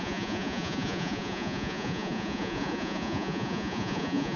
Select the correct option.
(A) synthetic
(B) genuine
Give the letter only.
A